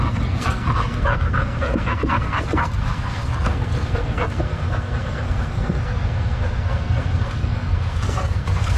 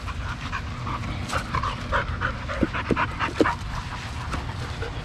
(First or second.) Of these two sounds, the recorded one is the second